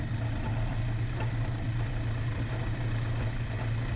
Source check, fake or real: real